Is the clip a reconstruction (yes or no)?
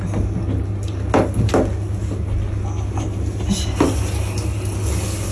no